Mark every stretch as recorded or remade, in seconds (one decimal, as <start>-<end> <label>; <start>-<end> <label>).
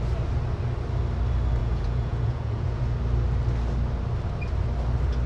0.0-1.6 recorded; 1.6-2.8 remade; 2.8-5.3 recorded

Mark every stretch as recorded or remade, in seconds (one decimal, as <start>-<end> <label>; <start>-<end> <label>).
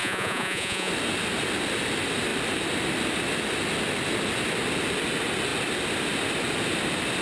0.0-0.9 remade; 0.9-7.2 recorded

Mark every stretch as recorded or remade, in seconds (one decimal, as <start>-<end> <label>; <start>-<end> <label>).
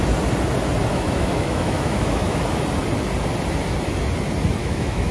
0.0-0.9 recorded; 0.9-2.4 remade; 2.4-4.6 recorded; 4.6-5.1 remade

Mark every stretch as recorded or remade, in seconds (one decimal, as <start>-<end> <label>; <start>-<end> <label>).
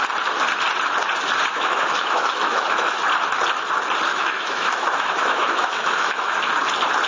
0.0-1.5 recorded; 1.5-3.0 remade; 3.0-4.1 recorded; 4.1-6.4 remade; 6.4-7.1 recorded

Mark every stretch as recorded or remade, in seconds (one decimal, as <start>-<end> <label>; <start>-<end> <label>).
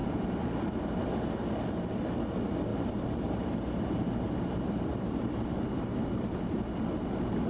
0.0-2.7 recorded; 2.7-6.6 remade; 6.6-7.5 recorded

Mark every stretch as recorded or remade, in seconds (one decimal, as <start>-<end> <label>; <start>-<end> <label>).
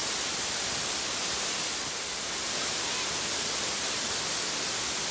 0.0-5.1 recorded